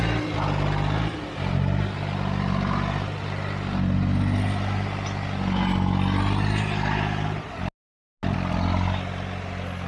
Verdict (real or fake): real